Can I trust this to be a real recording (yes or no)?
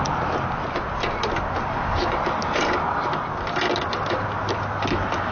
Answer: yes